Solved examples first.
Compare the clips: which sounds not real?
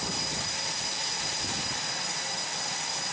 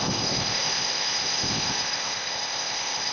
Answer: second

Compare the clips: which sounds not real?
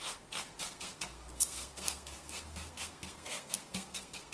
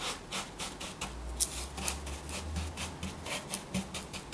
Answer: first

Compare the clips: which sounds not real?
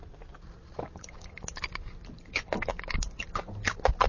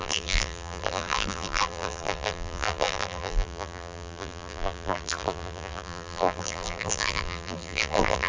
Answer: second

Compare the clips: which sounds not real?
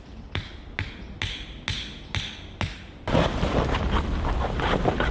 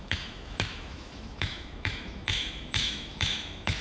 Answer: second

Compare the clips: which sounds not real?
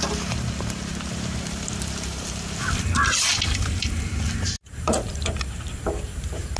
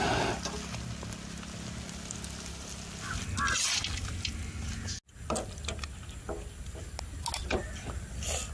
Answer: first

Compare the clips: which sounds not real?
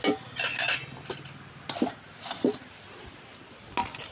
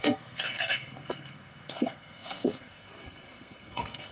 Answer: second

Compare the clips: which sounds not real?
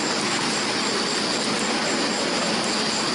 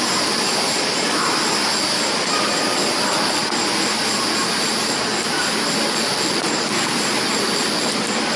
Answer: second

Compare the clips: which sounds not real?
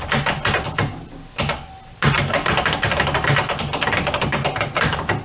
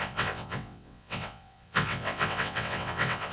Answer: second